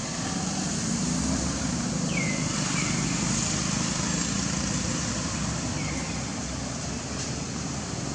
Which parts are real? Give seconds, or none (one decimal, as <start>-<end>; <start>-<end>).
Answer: none